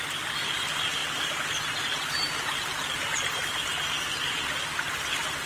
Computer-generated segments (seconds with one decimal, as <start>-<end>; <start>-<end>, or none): none